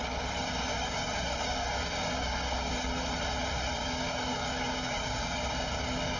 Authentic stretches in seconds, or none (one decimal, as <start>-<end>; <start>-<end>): 0.0-0.7; 2.7-3.8